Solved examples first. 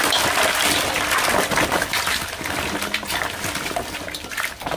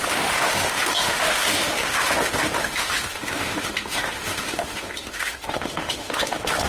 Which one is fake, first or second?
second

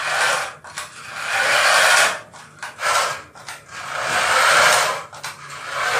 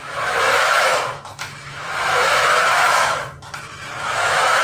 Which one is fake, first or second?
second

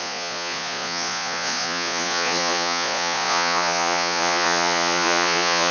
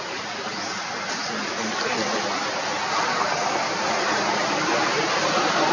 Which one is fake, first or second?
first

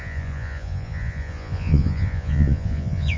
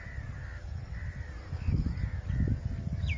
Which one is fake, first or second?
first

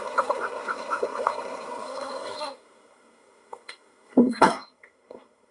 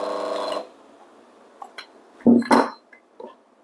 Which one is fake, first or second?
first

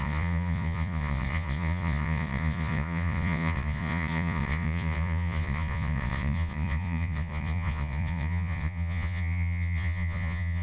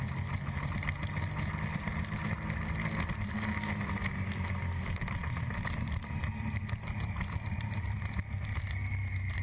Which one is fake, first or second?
first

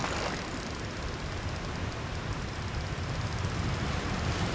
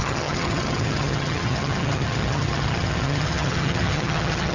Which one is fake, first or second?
second